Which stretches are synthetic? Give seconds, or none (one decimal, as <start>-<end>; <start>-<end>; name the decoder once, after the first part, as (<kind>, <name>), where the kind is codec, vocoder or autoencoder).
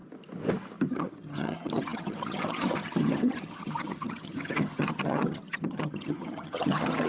0.9-7.1 (vocoder, HiFi-GAN)